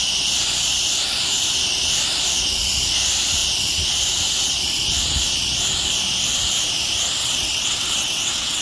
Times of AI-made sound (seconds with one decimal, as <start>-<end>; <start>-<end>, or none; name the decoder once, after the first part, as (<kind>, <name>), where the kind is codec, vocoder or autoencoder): 7.2-8.6 (vocoder, WaveNeXt)